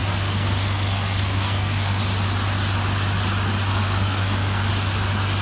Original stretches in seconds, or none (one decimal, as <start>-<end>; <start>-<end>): 2.0-3.7; 4.7-5.4